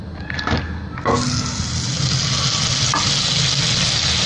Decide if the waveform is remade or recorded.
recorded